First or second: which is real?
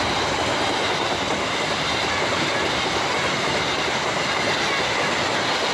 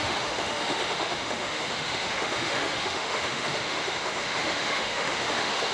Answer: first